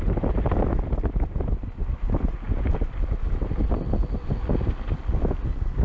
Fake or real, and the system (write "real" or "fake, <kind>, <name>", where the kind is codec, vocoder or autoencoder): real